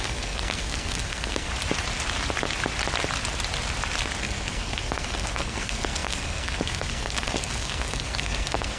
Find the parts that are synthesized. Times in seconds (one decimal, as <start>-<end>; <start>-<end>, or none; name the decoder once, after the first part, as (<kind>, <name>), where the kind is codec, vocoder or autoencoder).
0.0-1.5 (codec, SNAC); 4.2-8.8

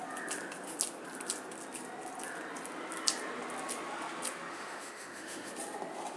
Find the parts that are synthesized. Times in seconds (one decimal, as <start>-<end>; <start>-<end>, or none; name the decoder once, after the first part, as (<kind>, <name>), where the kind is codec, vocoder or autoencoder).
4.5-5.5 (autoencoder, DAC-VAE)

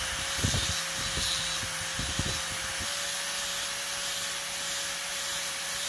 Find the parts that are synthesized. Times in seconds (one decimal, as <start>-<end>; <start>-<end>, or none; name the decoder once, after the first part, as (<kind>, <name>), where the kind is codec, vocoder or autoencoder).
5.1-5.9 (vocoder, BigVGAN v2)

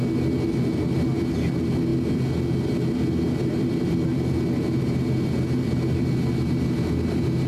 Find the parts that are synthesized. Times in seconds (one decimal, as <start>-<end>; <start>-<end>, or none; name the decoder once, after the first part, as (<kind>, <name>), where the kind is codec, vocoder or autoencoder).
none

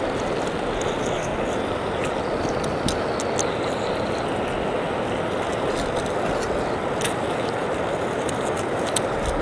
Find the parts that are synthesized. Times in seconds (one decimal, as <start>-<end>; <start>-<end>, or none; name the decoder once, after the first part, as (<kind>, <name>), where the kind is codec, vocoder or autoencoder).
none

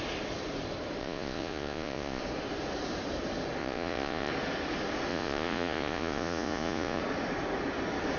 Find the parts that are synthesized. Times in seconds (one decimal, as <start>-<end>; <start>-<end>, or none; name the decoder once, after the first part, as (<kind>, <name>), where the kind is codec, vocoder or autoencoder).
1.0-2.2 (vocoder, Vocos); 3.6-4.3; 5.1-7.0

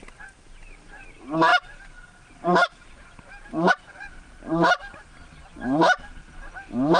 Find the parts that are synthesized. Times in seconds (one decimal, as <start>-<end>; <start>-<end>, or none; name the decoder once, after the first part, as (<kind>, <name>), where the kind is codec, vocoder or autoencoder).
none